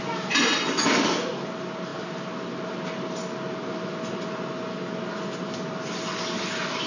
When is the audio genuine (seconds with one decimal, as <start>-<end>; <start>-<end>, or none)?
0.0-6.9

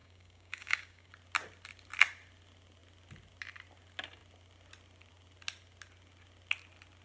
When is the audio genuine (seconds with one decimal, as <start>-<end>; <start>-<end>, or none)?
1.1-7.0

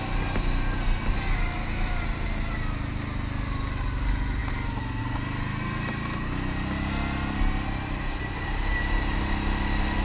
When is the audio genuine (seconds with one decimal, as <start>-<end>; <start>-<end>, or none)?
0.0-10.0

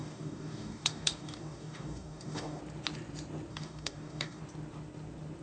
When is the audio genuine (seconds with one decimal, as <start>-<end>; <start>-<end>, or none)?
2.6-3.5; 4.4-5.4

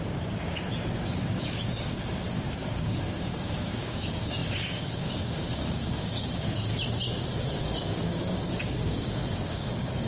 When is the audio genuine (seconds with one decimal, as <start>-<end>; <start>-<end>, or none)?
6.7-7.4

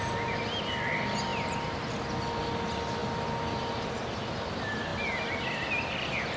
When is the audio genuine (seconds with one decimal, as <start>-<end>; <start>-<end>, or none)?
0.0-6.4

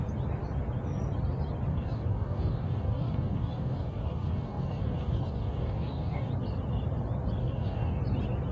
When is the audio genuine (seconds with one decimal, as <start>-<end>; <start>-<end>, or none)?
0.0-1.7; 6.3-7.4; 8.0-8.5